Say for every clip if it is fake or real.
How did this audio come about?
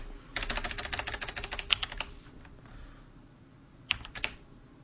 real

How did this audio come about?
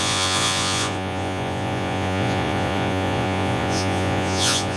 fake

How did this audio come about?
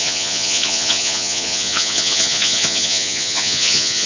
fake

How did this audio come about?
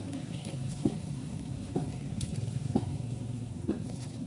fake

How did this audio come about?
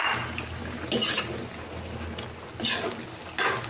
real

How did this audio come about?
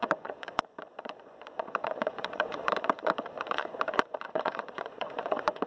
fake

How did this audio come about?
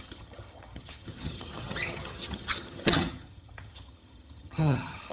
fake